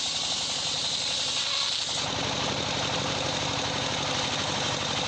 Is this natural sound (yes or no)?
yes